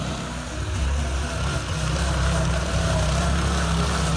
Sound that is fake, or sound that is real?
real